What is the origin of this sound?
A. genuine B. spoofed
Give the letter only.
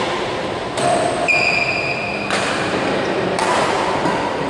A